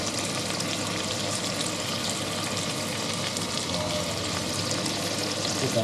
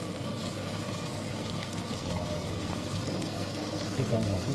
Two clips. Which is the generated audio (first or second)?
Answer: second